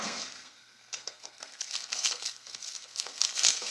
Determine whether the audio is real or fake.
fake